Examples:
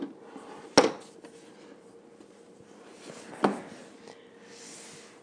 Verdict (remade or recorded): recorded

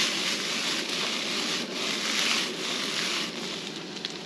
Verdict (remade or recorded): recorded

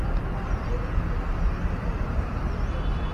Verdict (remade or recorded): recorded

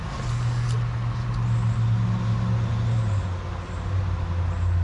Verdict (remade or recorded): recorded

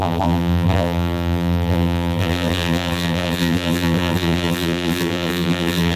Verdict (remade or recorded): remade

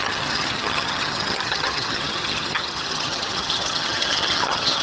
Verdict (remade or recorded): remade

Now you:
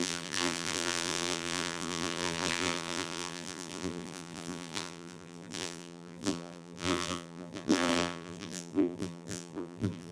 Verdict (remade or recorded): remade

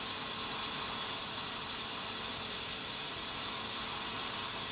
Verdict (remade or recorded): recorded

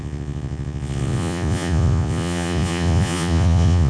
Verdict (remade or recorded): remade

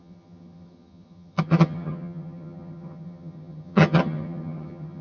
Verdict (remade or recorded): remade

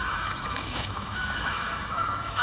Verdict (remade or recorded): remade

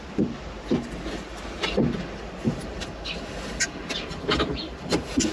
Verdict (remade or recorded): recorded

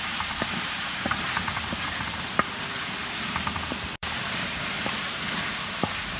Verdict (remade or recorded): remade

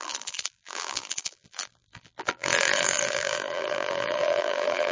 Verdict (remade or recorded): remade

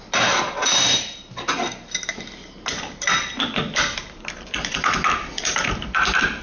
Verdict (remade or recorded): recorded